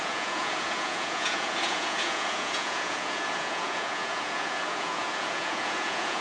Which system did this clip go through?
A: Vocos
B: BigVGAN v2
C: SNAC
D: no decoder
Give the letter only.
A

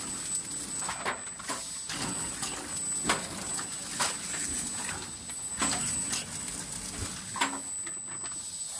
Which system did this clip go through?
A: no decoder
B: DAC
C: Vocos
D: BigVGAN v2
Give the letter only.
A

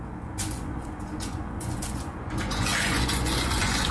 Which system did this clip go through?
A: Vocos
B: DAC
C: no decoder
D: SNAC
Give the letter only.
A